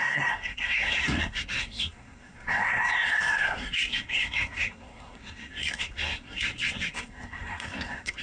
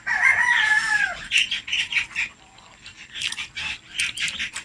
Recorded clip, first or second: second